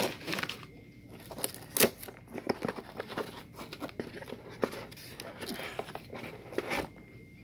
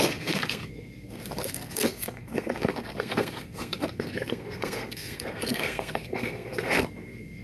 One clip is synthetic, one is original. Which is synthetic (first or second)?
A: second